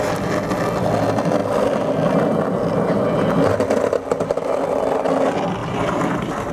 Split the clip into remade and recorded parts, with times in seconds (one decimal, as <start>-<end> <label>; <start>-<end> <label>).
0.0-5.6 recorded; 5.6-6.5 remade